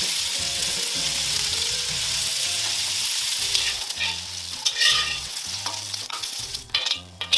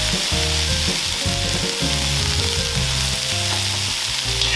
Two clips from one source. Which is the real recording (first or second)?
second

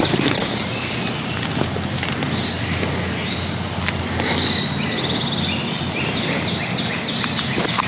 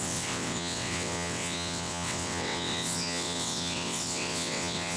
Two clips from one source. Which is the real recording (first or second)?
first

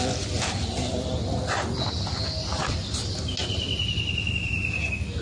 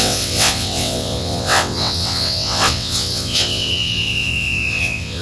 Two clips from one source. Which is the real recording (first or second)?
first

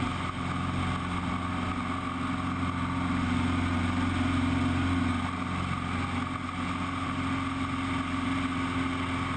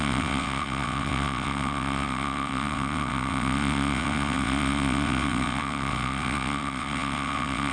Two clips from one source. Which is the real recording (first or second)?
first